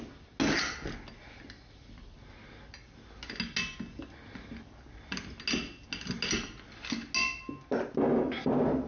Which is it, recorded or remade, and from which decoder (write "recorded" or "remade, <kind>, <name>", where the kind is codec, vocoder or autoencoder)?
recorded